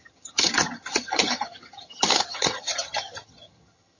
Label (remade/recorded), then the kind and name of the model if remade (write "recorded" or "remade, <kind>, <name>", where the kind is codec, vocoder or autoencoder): remade, vocoder, HiFi-GAN